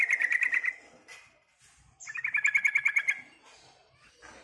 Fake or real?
real